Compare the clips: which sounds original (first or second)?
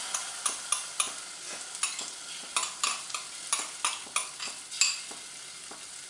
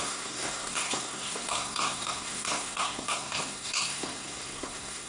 first